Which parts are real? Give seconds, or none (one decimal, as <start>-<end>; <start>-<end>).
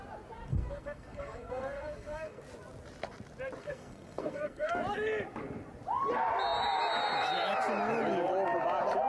0.0-0.5; 2.4-3.6; 4.7-9.1